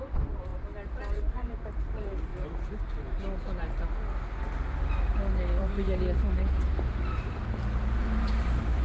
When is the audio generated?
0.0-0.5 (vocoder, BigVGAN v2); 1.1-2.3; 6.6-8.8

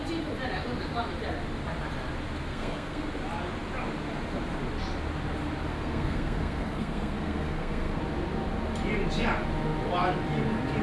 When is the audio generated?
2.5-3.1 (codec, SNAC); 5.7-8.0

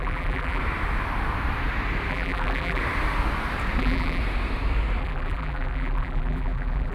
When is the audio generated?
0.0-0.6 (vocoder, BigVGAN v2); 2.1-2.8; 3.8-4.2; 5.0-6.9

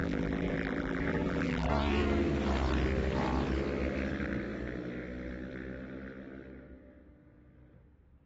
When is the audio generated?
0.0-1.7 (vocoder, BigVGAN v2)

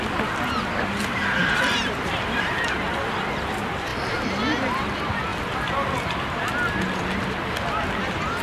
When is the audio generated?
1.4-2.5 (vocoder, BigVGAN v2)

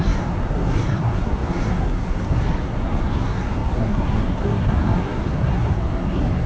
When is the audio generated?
0.0-6.5 (codec, SNAC)